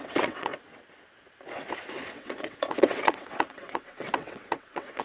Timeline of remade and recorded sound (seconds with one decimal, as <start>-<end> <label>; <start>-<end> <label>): 0.0-0.5 remade; 0.5-2.1 recorded; 2.1-5.0 remade